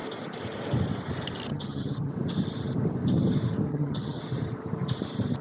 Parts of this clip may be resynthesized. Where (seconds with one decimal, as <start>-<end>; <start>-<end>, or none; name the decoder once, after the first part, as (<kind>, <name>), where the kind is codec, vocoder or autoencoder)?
1.5-2.1 (vocoder, HiFi-GAN); 3.7-4.2